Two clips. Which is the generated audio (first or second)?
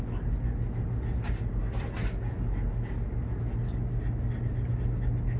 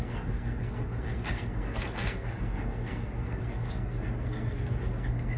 second